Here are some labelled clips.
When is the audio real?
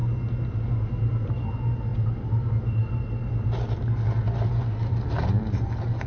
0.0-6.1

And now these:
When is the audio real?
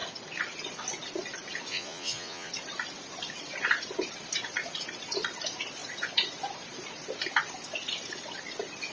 0.0-1.7; 2.5-8.9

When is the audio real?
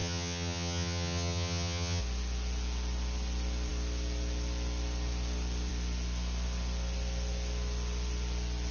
2.0-8.7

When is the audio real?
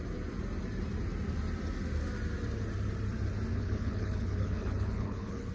0.0-3.5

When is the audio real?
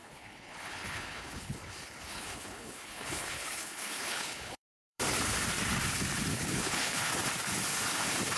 5.0-6.3; 7.1-8.4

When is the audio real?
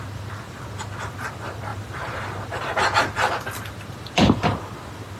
0.0-5.2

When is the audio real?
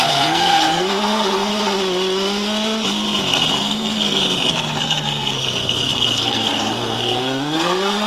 1.5-3.5